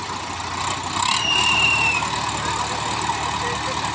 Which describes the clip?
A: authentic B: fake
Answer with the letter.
A